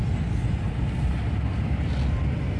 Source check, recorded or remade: recorded